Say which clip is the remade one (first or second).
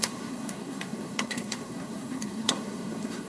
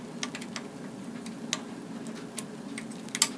first